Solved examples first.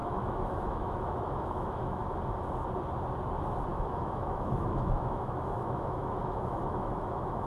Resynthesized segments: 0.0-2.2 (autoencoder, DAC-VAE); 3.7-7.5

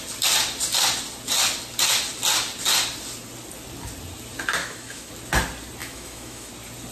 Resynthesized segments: 4.6-5.1 (autoencoder, DAC-VAE); 5.8-6.5